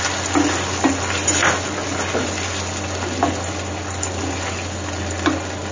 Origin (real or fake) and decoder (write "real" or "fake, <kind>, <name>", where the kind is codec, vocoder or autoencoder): real